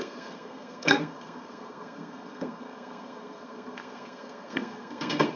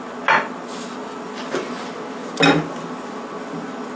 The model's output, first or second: first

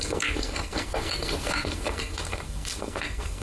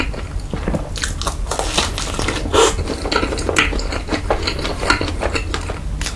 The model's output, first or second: first